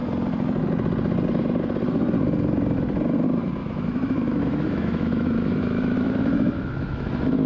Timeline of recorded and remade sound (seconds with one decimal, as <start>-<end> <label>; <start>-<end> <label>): 0.0-3.6 recorded; 3.6-7.5 remade

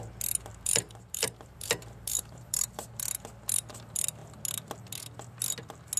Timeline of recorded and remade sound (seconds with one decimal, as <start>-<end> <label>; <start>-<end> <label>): 0.0-0.5 recorded; 0.5-2.9 remade; 2.9-6.0 recorded